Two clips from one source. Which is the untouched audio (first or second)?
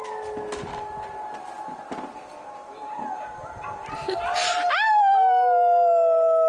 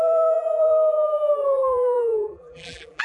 first